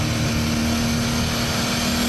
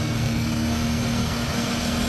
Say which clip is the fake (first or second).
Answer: second